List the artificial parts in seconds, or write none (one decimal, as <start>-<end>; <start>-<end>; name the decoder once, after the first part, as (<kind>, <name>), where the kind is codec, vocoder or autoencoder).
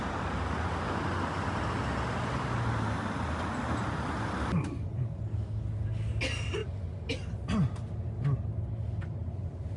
none